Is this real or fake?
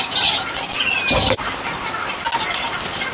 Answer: real